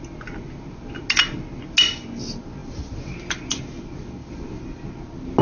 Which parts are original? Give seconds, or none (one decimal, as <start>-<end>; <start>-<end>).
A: 0.0-2.6; 3.6-4.2; 4.9-5.4

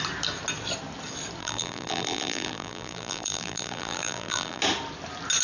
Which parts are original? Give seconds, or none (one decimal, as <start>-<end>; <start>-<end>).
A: 0.0-1.4; 4.6-5.4

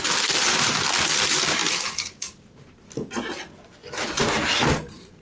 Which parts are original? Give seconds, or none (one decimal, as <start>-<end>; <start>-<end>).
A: 0.0-5.2

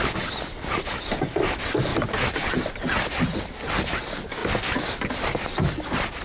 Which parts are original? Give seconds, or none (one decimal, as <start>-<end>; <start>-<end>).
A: 0.0-1.9; 2.7-6.2

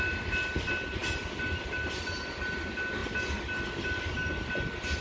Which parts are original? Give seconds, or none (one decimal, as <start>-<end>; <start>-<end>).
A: 0.0-5.0

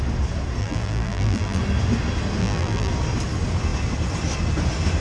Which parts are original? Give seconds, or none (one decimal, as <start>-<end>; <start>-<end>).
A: 0.0-0.6; 1.6-2.4; 2.9-5.0

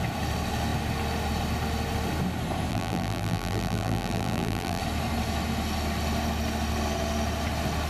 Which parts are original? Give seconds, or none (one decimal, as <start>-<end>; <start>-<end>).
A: 0.0-2.7; 4.8-7.9

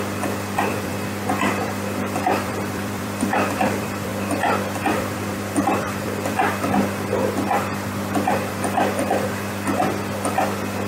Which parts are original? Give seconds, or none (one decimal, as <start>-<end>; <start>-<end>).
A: 0.9-1.5; 4.1-4.9; 6.4-10.9